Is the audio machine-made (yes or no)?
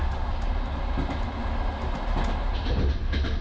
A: no